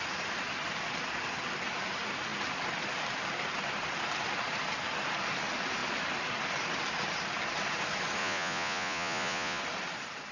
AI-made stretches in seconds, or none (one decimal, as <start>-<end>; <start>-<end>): 8.2-9.6